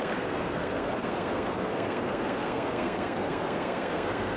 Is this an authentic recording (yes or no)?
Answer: no